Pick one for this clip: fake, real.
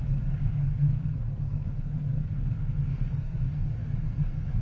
fake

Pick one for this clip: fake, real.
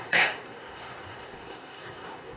fake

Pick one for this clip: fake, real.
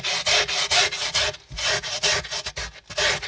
real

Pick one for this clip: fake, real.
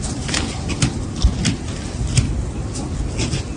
real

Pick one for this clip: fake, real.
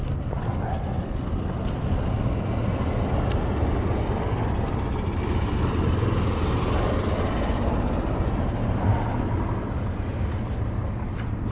real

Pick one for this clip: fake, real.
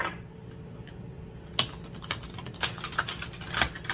real